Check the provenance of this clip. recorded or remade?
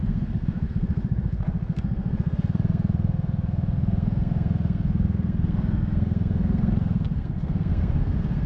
remade